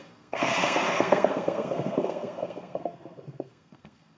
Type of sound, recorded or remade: remade